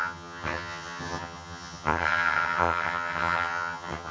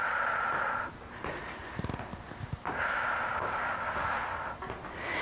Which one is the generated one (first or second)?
first